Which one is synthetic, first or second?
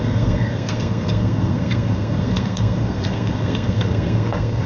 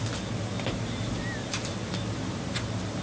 first